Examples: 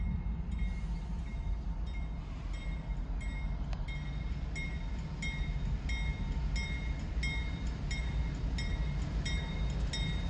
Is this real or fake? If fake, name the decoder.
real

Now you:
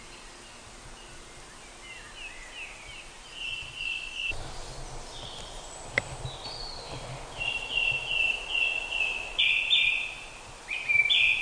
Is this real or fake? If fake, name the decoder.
real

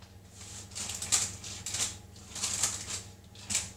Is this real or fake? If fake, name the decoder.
real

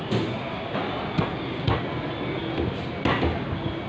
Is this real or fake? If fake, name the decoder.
real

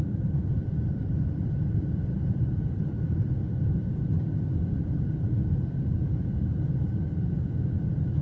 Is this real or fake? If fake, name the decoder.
fake, vocoder, BigVGAN v2